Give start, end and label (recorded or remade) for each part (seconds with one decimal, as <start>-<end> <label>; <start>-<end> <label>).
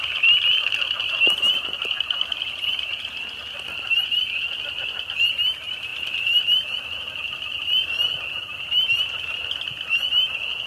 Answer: 0.0-10.7 recorded